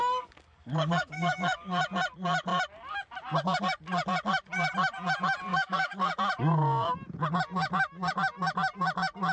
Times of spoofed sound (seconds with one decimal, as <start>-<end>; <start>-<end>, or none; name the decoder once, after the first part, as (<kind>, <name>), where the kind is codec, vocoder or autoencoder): 0.0-1.8 (codec, DAC); 5.5-6.1